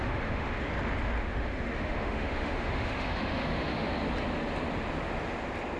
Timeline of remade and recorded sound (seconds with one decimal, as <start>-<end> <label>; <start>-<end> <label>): 0.0-0.7 remade; 0.7-1.2 recorded; 1.2-3.9 remade; 3.9-5.8 recorded